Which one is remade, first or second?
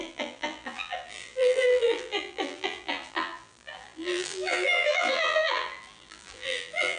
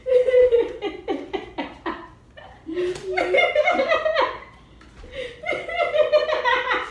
first